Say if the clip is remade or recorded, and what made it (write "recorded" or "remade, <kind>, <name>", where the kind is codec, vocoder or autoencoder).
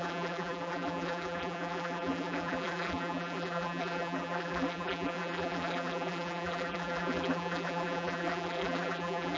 remade, vocoder, BigVGAN v2